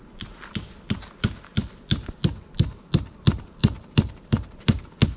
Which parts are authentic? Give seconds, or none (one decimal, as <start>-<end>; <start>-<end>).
0.0-3.6; 4.8-5.2

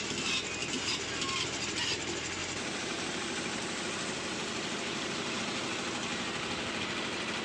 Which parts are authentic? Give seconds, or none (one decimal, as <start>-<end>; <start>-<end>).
0.0-2.4; 5.4-7.4

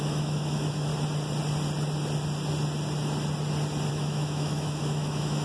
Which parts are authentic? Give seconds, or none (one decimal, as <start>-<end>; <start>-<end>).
0.9-3.9

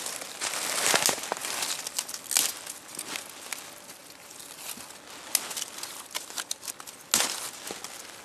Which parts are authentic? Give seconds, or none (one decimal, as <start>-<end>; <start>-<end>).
0.0-8.2

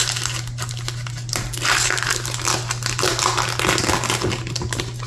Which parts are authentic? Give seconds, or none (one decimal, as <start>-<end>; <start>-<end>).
0.0-5.1

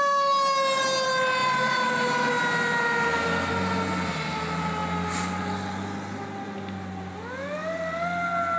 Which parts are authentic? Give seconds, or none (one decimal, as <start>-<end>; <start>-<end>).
0.0-8.6